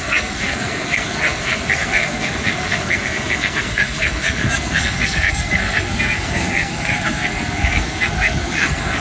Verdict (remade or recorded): remade